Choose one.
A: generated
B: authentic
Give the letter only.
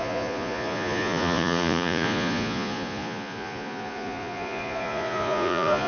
A